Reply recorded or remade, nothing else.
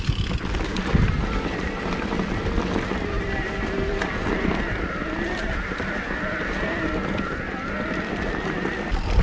recorded